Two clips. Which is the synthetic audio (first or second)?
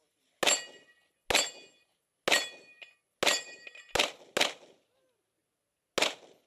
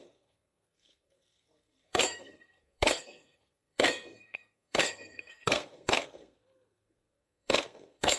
second